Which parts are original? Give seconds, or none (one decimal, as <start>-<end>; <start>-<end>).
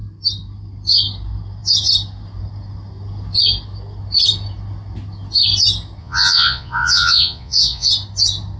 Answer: 0.0-6.0; 7.9-8.6